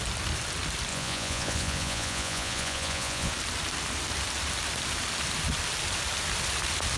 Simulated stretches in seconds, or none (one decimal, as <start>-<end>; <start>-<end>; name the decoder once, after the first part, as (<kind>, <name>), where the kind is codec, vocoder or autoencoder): 0.9-3.3 (vocoder, Vocos)